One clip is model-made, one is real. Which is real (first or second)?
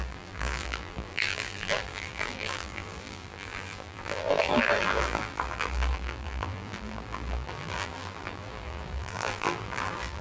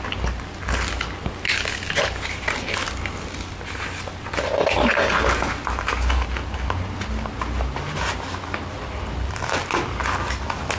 second